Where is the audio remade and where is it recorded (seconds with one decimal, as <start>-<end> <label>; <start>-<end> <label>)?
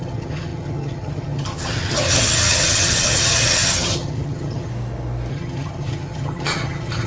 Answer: 0.0-4.7 remade; 4.7-5.3 recorded; 5.3-7.1 remade